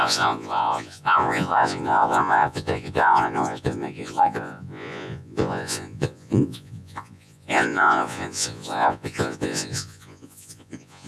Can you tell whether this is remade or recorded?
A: remade